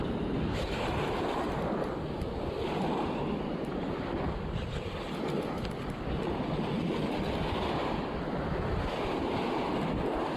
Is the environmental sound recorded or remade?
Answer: recorded